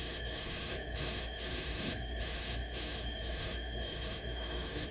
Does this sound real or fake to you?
fake